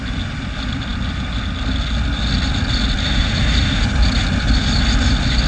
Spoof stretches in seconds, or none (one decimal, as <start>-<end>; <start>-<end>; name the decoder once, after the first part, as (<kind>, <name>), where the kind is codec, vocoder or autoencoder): none